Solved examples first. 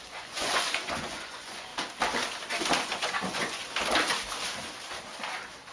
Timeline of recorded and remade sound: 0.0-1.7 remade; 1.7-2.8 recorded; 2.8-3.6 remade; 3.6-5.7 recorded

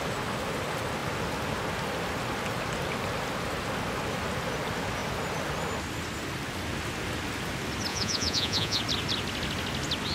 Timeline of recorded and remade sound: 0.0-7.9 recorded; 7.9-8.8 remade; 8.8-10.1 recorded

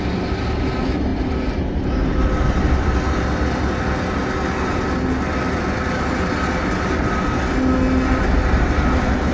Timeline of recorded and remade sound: 0.0-9.3 recorded

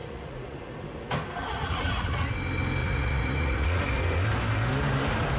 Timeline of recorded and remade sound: 0.0-0.6 remade; 0.6-1.5 recorded; 1.5-2.3 remade; 2.3-2.8 recorded; 2.8-3.8 remade; 3.8-5.4 recorded

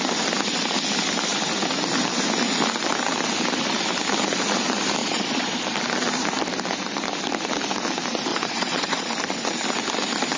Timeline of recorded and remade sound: 0.0-5.0 recorded; 5.0-5.6 remade; 5.6-8.3 recorded; 8.3-9.1 remade; 9.1-10.4 recorded